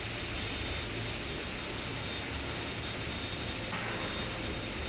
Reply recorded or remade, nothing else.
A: recorded